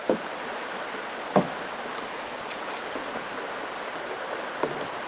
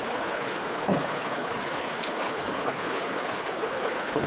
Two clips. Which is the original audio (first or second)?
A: first